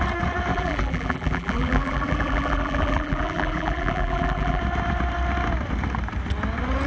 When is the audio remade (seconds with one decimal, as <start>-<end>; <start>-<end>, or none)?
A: 0.5-4.6

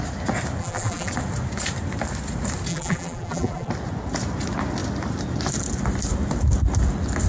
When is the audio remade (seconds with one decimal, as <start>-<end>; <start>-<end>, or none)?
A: 0.6-1.1; 2.7-3.7